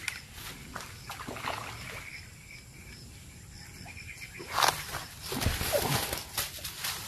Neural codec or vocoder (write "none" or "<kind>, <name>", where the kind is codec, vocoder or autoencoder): none